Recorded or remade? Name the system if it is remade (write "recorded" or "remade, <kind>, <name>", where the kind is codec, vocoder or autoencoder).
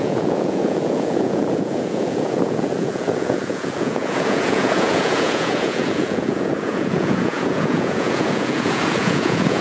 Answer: remade, vocoder, Vocos